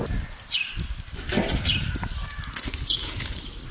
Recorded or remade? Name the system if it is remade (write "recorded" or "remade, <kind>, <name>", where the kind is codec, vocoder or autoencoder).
recorded